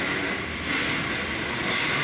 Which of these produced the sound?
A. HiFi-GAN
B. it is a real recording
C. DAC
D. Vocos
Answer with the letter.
B